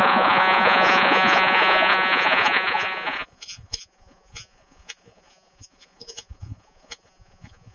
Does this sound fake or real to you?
fake